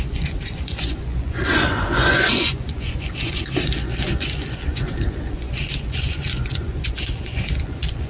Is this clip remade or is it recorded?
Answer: remade